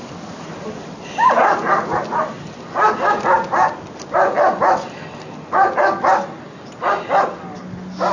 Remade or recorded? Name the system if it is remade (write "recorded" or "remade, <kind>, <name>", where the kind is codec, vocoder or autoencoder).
recorded